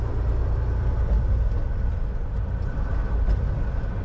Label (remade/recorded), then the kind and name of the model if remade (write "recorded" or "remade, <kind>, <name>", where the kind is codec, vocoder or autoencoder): recorded